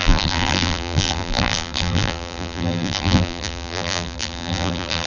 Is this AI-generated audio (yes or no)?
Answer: yes